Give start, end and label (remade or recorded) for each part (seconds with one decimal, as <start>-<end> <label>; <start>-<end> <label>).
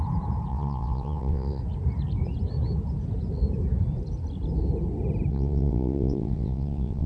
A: 0.0-0.5 recorded; 0.5-1.6 remade; 1.6-5.3 recorded; 5.3-7.1 remade